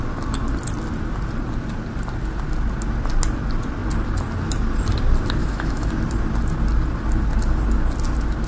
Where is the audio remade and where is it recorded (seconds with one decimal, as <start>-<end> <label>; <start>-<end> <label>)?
0.0-5.4 recorded; 5.4-5.9 remade; 5.9-8.5 recorded